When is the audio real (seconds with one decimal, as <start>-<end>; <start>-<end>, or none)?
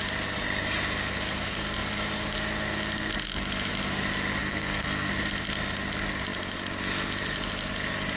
0.0-4.4; 5.1-8.2